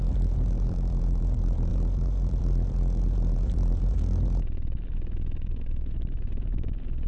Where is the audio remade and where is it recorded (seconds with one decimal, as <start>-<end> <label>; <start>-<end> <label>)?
0.0-7.1 remade